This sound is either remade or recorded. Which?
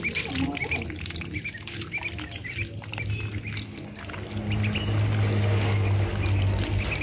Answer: recorded